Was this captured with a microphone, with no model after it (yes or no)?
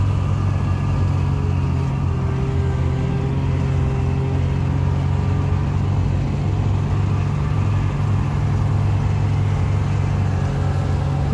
yes